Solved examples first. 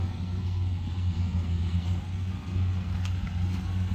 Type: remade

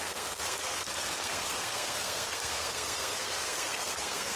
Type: remade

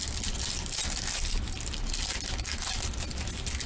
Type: recorded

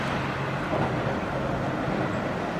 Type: recorded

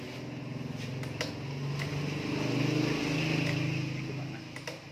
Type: recorded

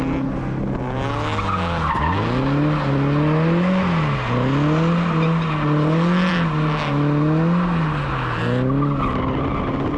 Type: recorded